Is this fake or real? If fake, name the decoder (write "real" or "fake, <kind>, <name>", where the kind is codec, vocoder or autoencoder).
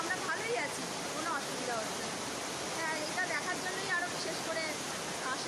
real